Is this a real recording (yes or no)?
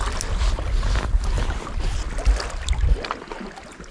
yes